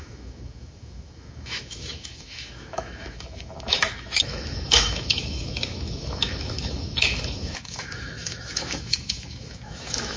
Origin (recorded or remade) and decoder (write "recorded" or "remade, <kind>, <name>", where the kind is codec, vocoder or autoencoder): remade, autoencoder, DAC-VAE